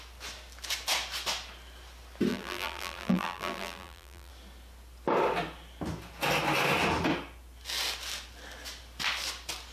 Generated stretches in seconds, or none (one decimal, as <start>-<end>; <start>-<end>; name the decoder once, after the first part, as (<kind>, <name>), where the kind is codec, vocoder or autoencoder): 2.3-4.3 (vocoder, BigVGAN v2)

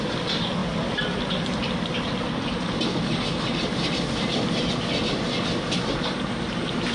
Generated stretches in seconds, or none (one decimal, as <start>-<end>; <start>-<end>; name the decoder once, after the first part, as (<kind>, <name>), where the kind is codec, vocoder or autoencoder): 0.6-4.7 (vocoder, BigVGAN v2)

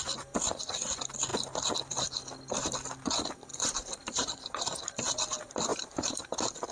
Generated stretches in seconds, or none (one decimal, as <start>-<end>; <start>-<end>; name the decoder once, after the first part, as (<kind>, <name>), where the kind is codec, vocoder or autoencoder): 3.5-4.6 (vocoder, BigVGAN v2); 5.7-6.3

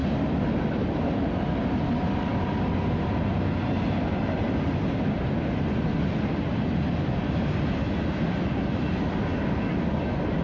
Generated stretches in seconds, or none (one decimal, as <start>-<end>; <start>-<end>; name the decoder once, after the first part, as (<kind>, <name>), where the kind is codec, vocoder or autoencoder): 0.0-1.6 (vocoder, BigVGAN v2)

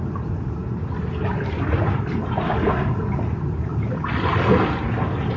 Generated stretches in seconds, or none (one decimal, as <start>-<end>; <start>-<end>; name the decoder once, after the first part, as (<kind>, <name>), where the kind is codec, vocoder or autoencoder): 0.6-1.3 (vocoder, BigVGAN v2); 3.7-4.8

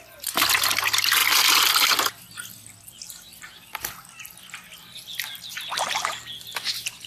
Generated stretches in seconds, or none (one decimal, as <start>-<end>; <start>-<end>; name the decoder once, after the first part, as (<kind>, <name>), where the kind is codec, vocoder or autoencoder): none